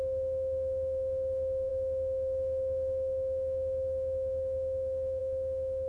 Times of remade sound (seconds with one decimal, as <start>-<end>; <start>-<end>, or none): 0.0-5.9